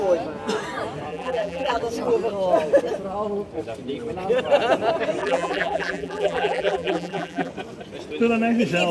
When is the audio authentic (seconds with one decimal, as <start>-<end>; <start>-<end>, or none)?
0.0-1.1; 1.8-5.2; 7.5-8.9